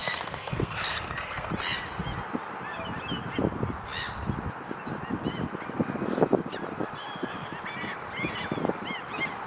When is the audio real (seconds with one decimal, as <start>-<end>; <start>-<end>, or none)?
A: 1.5-9.5